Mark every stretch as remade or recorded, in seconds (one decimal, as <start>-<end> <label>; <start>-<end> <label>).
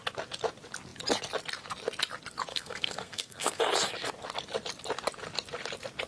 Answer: 0.0-2.5 recorded; 2.5-3.6 remade; 3.6-6.1 recorded